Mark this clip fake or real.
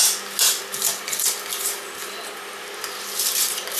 real